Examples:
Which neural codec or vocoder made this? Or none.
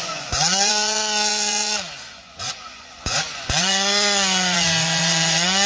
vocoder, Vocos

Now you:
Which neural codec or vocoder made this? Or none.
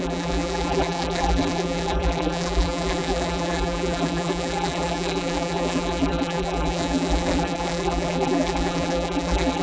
vocoder, BigVGAN v2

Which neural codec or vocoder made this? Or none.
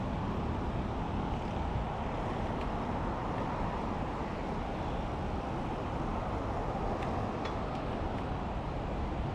none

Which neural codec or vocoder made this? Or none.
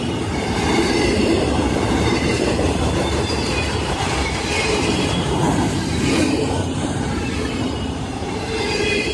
vocoder, BigVGAN v2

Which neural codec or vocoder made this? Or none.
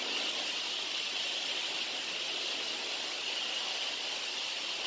none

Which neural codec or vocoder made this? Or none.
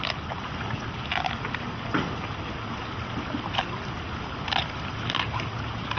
none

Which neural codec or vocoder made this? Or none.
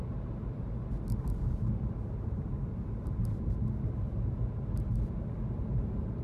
none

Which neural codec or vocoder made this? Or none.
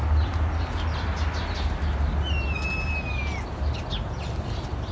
none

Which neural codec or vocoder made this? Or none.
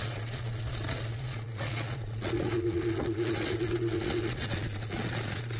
vocoder, Vocos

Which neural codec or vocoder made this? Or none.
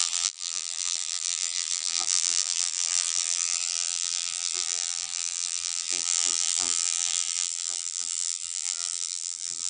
vocoder, BigVGAN v2